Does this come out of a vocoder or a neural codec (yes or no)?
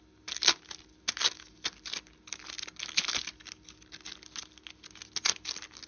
no